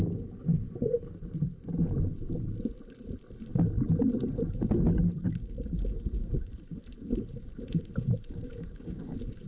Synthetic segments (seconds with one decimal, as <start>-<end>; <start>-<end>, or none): 0.5-2.5; 6.2-9.0